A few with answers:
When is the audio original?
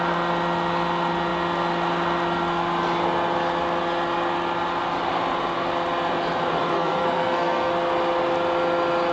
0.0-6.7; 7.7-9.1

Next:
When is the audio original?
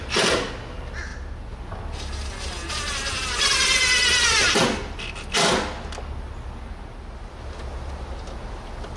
0.0-9.0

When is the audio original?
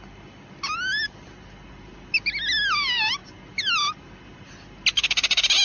0.0-5.6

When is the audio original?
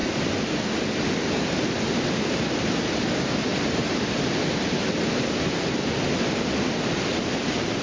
0.0-7.8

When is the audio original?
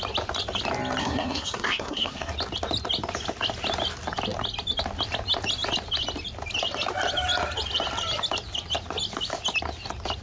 0.0-1.0; 2.3-10.2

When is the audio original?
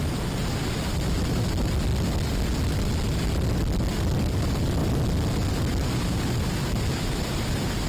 1.9-4.3; 4.8-6.1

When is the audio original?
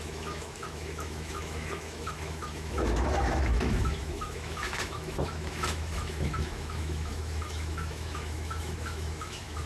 none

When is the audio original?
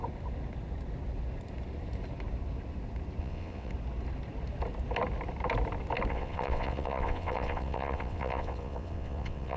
0.0-3.2; 3.7-6.1